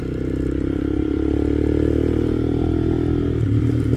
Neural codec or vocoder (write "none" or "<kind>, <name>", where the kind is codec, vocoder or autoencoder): vocoder, BigVGAN v2